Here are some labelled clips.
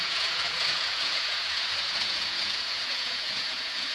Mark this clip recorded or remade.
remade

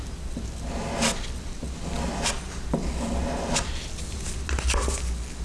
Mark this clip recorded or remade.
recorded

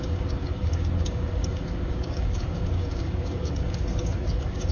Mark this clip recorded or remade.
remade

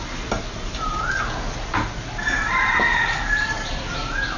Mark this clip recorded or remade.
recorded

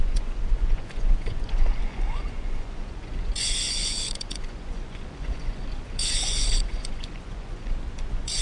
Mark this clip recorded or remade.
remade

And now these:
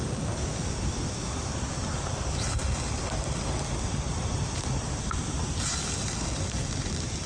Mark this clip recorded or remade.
recorded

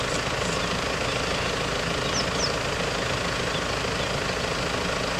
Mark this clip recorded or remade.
recorded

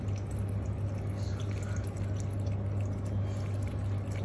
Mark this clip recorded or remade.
recorded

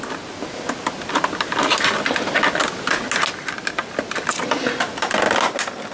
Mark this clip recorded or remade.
recorded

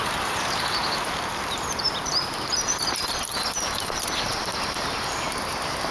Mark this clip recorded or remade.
remade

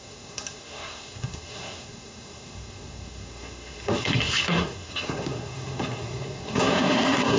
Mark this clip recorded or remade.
remade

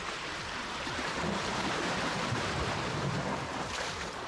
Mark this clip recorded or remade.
remade